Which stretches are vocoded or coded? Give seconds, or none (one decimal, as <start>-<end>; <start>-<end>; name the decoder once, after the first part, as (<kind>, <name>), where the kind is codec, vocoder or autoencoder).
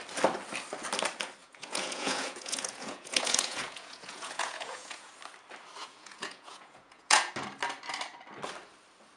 1.4-5.1 (vocoder, Vocos); 5.8-7.3